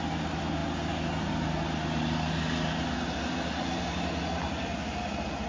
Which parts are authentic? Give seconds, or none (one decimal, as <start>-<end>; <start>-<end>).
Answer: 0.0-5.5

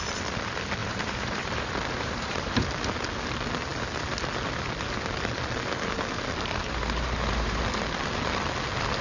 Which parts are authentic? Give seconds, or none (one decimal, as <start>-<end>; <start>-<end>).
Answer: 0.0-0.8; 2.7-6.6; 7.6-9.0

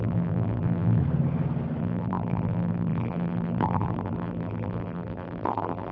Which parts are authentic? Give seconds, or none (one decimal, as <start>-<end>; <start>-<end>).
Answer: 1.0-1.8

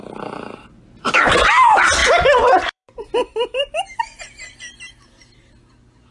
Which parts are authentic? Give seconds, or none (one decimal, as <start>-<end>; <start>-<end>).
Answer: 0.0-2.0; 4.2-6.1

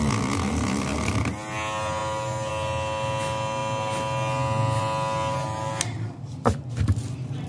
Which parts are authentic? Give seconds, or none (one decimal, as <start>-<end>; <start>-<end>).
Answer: 0.0-7.5

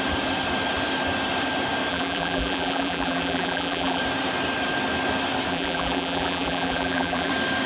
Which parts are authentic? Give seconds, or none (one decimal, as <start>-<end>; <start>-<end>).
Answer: 0.0-1.9; 4.0-5.5; 7.3-7.7